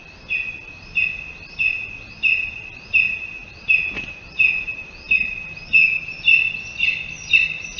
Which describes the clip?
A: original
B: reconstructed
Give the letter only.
A